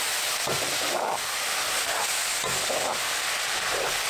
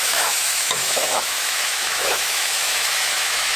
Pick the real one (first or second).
first